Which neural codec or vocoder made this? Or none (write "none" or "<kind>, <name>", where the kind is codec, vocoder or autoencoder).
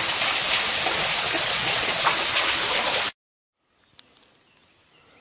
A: none